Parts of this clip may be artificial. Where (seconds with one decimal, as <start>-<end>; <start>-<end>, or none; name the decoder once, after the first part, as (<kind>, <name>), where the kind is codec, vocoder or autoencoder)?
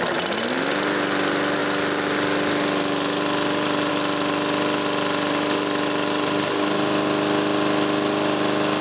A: none